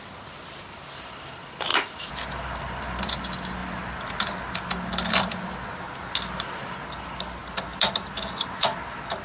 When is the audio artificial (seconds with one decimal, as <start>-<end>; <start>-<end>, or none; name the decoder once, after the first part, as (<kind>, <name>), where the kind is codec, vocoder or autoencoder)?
none